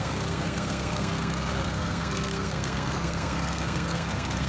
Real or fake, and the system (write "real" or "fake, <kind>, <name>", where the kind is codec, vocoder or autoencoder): fake, codec, SNAC